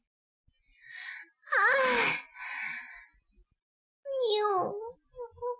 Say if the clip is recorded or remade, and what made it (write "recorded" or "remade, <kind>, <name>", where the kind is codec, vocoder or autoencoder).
recorded